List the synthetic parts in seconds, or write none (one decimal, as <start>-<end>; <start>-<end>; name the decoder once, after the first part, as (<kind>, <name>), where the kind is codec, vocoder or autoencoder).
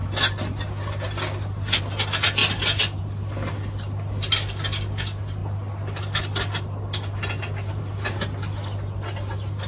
none